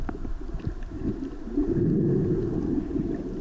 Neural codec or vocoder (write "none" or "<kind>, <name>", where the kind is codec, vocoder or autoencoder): none